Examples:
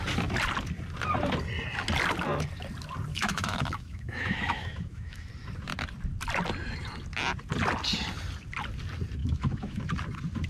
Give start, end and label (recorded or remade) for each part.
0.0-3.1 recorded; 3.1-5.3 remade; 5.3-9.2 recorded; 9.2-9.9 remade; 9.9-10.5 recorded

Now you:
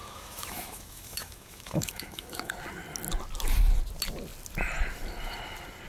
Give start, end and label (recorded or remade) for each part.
0.0-2.5 remade; 2.5-5.9 recorded